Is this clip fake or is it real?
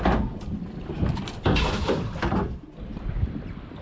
real